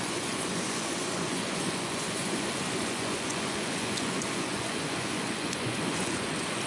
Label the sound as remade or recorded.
remade